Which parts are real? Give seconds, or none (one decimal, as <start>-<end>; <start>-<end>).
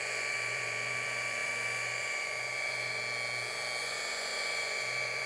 3.0-3.8